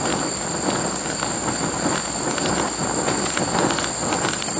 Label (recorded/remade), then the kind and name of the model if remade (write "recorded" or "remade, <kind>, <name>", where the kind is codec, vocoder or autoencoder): recorded